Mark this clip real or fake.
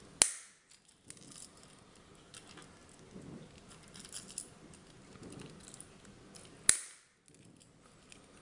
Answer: real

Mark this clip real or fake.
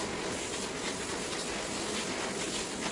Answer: real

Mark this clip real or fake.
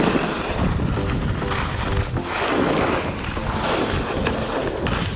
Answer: real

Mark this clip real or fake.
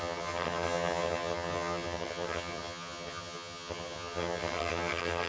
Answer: fake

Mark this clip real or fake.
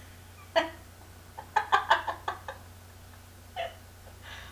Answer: real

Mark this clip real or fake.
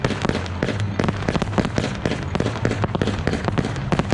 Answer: real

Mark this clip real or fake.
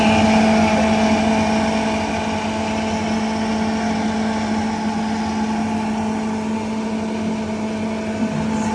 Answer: real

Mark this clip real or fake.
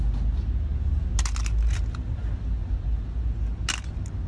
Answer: real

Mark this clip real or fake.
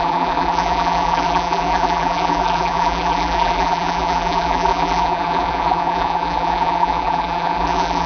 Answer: fake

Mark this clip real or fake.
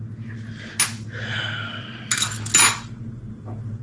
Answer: real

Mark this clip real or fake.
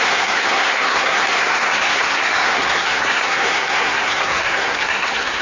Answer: fake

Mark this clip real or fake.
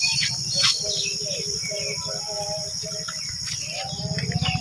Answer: real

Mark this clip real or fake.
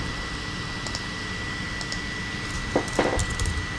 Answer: real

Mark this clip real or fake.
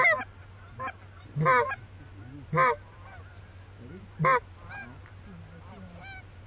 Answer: real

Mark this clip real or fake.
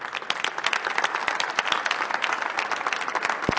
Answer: real